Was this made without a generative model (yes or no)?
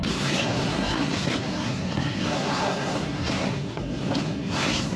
no